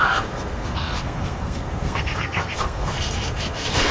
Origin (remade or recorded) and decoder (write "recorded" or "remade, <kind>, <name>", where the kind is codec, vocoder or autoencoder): remade, codec, SNAC